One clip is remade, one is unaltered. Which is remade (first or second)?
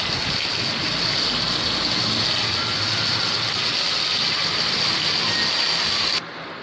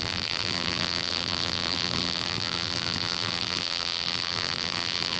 second